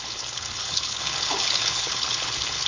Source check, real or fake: fake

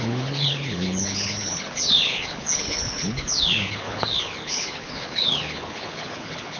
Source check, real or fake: fake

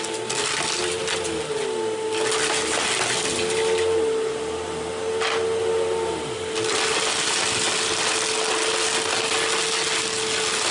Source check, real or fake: real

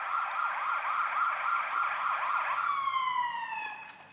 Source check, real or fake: real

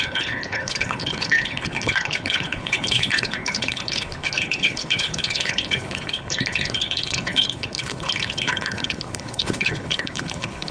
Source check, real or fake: fake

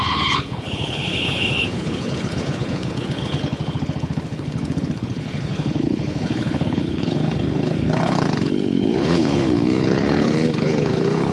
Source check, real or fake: fake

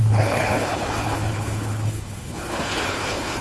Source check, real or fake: fake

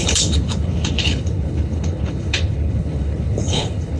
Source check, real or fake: fake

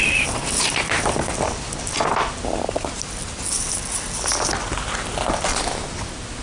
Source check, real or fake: real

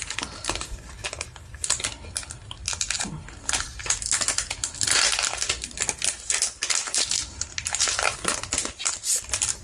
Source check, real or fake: real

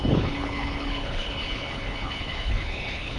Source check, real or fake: fake